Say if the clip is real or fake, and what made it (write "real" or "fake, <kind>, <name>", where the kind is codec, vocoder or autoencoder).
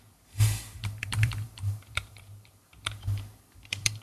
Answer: fake, vocoder, BigVGAN v2